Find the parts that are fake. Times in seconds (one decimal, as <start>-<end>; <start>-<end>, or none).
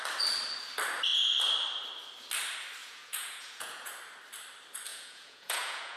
2.8-3.9; 4.9-6.0